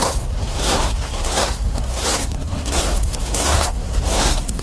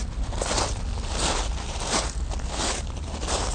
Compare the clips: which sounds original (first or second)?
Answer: second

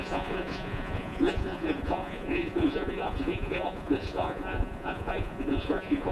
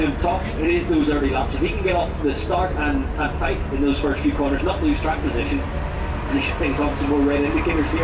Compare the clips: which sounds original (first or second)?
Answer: second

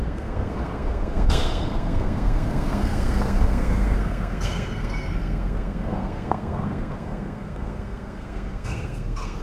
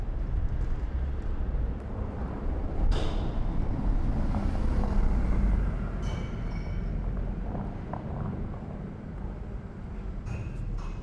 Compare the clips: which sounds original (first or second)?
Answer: second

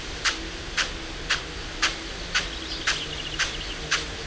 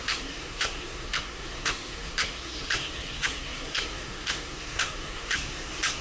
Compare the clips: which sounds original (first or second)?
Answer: first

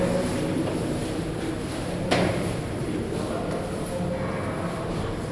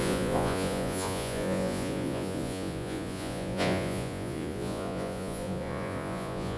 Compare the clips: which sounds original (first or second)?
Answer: first